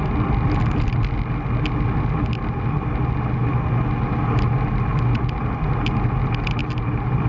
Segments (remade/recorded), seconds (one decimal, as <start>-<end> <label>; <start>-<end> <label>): 0.0-7.3 recorded